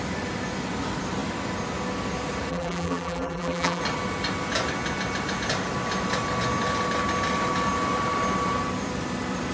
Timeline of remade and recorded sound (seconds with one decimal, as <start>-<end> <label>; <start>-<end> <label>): 0.0-2.5 recorded; 2.5-3.8 remade; 3.8-9.5 recorded